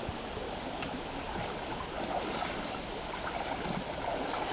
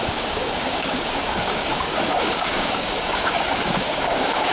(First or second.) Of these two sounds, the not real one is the second